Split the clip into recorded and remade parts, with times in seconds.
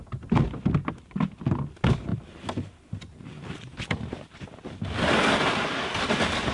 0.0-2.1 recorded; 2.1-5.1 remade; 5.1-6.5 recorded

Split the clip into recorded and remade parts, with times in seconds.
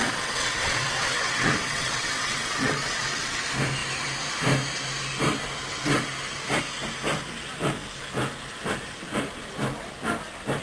0.0-3.4 remade; 3.4-10.6 recorded